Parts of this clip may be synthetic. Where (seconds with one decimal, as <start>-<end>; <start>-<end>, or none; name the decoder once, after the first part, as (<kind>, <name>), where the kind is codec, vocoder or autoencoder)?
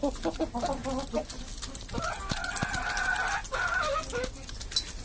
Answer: none